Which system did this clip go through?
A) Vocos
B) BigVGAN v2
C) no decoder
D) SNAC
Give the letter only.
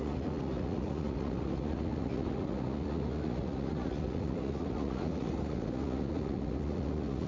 A